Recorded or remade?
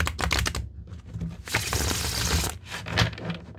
recorded